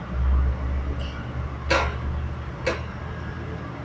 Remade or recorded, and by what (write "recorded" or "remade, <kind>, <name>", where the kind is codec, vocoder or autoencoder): recorded